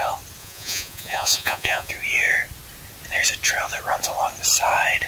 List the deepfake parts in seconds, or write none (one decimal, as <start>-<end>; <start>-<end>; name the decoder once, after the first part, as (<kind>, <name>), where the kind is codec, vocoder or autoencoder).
0.4-1.9 (vocoder, Vocos)